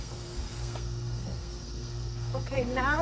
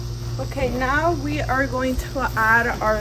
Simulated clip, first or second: first